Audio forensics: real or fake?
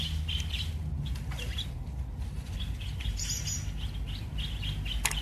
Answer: real